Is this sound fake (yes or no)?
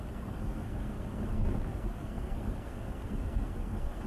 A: yes